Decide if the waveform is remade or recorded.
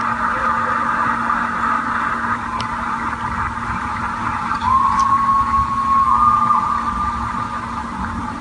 recorded